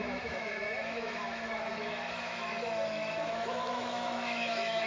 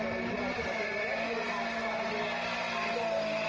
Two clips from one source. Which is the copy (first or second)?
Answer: first